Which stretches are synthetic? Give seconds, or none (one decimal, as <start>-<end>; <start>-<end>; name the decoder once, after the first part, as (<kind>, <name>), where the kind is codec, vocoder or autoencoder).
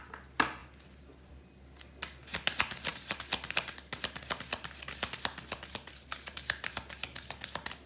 none